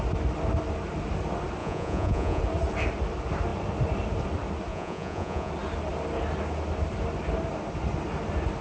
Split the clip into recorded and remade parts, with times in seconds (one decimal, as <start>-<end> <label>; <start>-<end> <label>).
0.0-1.6 recorded; 1.6-2.4 remade; 2.4-4.7 recorded; 4.7-5.5 remade; 5.5-8.6 recorded